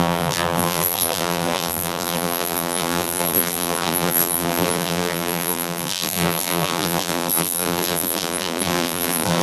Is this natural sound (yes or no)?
no